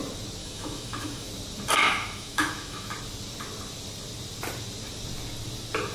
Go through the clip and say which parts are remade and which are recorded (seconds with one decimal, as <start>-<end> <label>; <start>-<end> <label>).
0.0-0.4 recorded; 0.4-1.3 remade; 1.3-1.8 recorded; 1.8-2.9 remade; 2.9-5.9 recorded